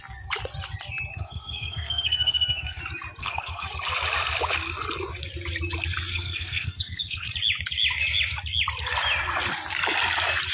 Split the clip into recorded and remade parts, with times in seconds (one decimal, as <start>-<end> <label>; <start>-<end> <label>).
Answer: 0.0-1.1 recorded; 1.1-2.8 remade; 2.8-3.2 recorded; 3.2-3.7 remade; 3.7-6.1 recorded; 6.1-7.3 remade; 7.3-10.5 recorded